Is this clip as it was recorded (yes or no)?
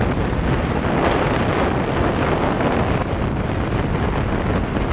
yes